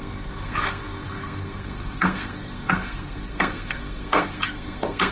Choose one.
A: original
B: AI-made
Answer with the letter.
B